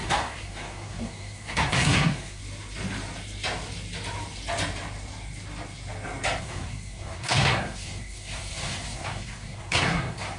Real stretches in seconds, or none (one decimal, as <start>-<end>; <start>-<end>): 2.4-6.4